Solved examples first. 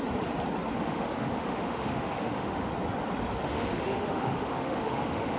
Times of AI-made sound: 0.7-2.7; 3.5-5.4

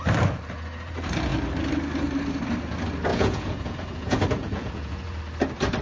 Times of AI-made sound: 3.1-5.2

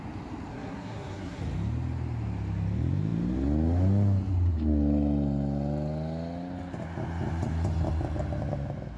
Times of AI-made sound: 0.5-1.4

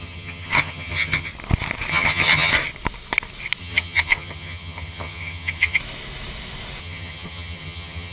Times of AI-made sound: 0.0-1.3; 1.9-2.5; 3.6-5.8; 6.8-8.1